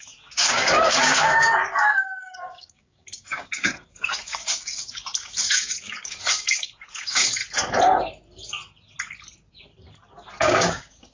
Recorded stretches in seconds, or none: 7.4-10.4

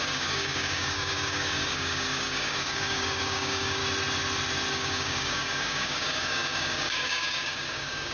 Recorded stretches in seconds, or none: 3.8-4.7